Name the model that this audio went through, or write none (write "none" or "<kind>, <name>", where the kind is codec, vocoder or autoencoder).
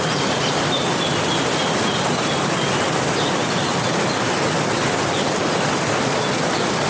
none